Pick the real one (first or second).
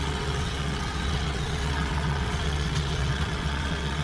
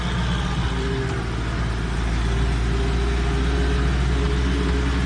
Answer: second